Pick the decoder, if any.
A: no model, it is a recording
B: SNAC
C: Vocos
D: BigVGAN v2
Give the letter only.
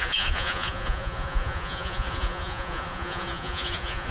C